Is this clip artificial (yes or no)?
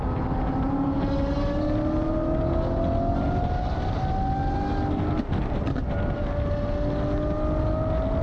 no